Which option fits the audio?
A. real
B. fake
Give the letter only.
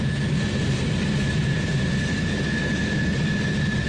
A